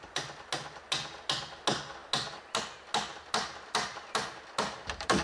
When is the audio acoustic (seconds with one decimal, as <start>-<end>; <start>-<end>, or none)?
0.0-5.2

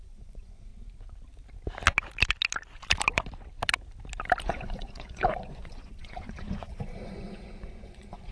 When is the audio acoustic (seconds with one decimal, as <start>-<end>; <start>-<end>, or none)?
0.7-4.4

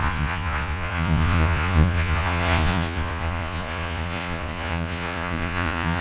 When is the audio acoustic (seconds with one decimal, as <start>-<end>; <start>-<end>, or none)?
none

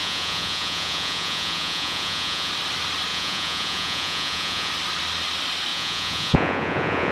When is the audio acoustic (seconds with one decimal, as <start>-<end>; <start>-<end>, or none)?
2.5-3.1; 4.7-5.7

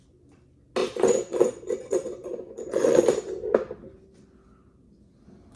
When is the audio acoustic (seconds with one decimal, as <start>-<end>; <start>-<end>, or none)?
0.0-0.8; 3.0-5.6

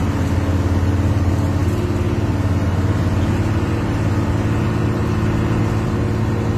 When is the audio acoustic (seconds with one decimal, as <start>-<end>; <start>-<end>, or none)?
0.0-6.6

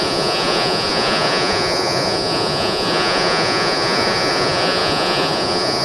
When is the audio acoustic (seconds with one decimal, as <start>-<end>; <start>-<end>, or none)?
none

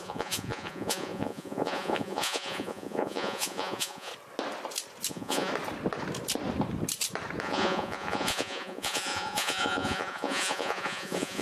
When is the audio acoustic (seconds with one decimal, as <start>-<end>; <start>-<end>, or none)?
4.1-5.1; 5.5-7.4